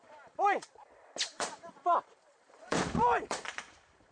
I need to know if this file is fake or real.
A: fake